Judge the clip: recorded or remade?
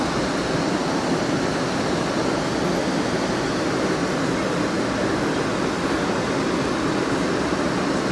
recorded